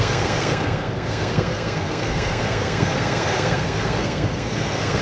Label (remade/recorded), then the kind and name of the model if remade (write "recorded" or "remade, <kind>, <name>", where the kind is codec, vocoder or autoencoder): remade, codec, SNAC